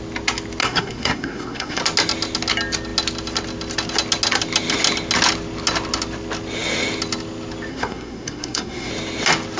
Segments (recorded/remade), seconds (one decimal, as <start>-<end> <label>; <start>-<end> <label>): 0.0-0.6 recorded; 0.6-1.8 remade; 1.8-7.7 recorded; 7.7-8.9 remade; 8.9-9.6 recorded